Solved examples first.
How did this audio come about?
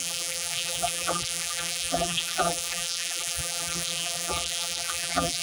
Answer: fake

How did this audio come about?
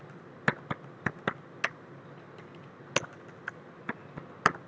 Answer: real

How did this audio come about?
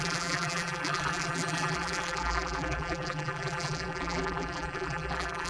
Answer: fake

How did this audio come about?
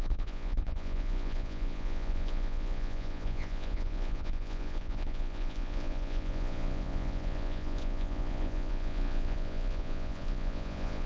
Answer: fake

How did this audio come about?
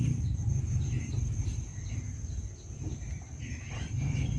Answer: fake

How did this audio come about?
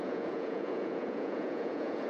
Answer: fake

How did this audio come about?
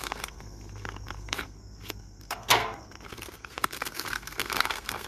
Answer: fake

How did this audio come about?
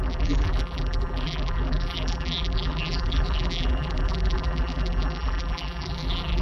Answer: fake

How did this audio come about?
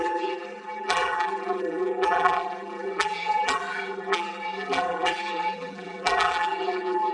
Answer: fake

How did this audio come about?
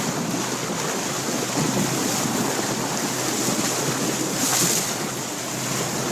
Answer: real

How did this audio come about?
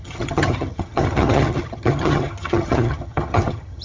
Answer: fake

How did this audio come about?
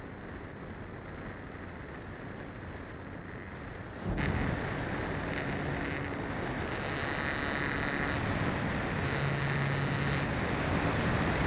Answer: real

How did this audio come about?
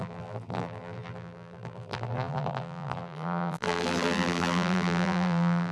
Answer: fake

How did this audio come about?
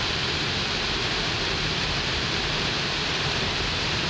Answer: fake